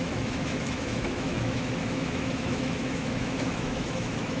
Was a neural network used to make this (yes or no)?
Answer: yes